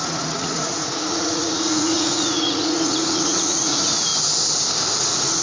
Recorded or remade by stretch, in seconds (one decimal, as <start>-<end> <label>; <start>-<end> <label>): 0.0-4.1 remade; 4.1-5.0 recorded; 5.0-5.4 remade